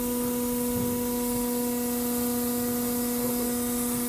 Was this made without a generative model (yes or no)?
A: yes